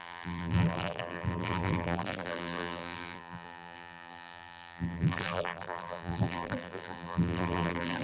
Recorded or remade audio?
remade